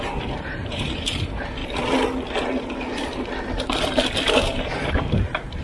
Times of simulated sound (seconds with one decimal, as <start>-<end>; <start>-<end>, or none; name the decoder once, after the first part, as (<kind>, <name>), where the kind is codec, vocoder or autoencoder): 0.0-1.6 (vocoder, BigVGAN v2); 5.0-5.6